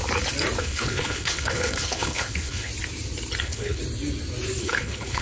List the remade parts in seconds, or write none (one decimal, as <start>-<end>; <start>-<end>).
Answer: 0.6-2.7; 3.4-3.8; 4.6-5.2